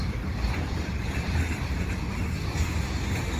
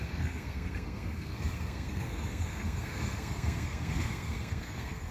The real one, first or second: first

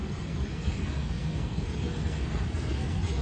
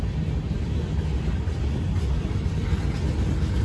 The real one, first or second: second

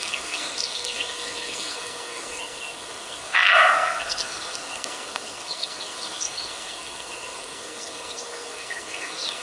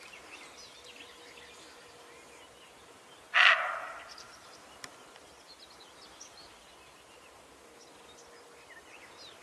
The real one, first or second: second